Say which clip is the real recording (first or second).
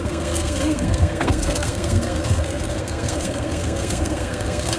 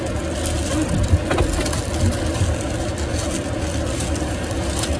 second